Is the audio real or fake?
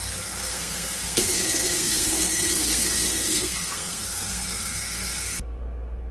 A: fake